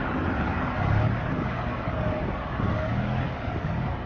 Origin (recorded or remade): remade